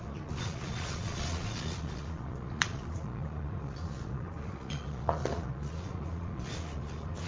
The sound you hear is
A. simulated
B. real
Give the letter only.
A